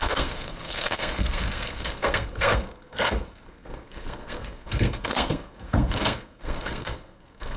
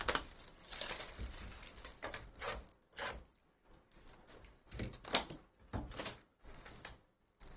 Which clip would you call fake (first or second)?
first